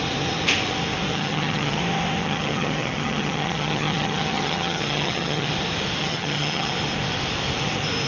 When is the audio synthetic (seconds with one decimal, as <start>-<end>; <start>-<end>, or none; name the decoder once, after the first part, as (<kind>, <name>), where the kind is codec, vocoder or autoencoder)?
1.1-1.8 (vocoder, HiFi-GAN); 2.2-5.5; 6.0-6.7